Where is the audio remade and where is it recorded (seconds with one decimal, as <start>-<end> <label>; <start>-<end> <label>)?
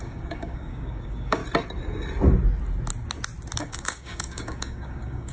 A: 0.0-1.4 remade; 1.4-3.6 recorded; 3.6-5.3 remade